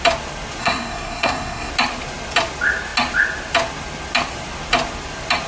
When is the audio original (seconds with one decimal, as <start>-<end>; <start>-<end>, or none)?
0.0-0.6; 1.7-5.5